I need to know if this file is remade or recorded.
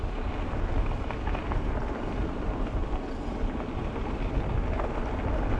recorded